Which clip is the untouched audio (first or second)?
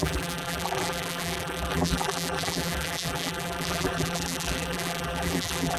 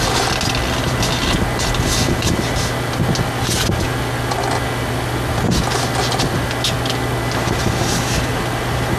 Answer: second